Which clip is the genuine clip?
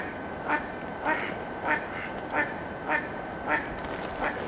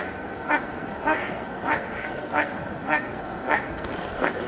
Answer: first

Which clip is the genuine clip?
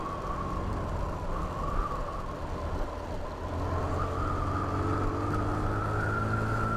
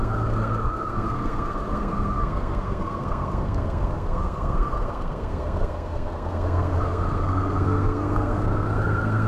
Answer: first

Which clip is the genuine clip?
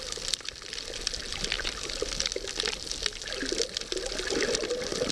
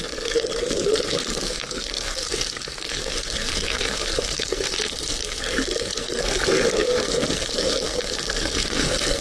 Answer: first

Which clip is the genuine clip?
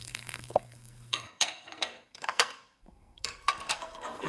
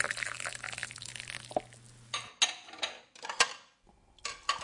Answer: second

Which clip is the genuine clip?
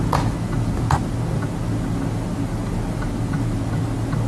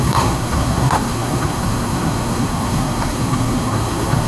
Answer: first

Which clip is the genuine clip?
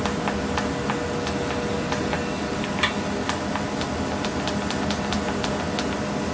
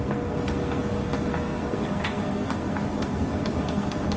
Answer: first